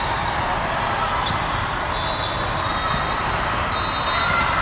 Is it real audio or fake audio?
real